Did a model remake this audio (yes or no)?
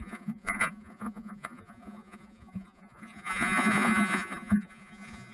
yes